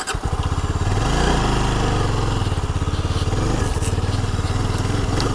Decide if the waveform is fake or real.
real